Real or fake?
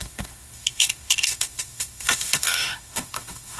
fake